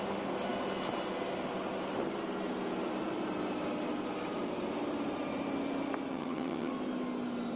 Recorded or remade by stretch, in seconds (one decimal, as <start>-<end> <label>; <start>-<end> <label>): 0.0-6.1 recorded; 6.1-6.7 remade; 6.7-7.6 recorded